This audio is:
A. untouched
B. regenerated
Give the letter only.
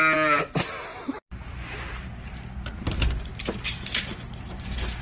A